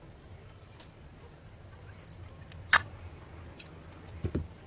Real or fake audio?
real